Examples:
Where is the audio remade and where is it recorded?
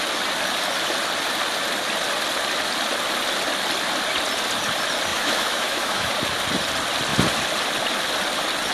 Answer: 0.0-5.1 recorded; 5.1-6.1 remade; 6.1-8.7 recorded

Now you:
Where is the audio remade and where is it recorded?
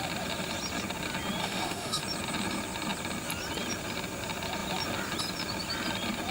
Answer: 0.0-1.4 recorded; 1.4-2.0 remade; 2.0-6.3 recorded